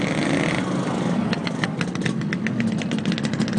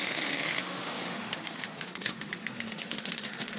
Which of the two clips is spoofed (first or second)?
second